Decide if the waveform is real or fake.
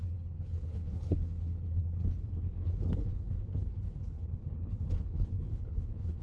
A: fake